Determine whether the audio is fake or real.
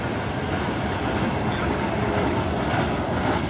real